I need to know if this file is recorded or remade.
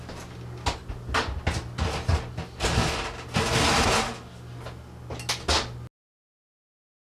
recorded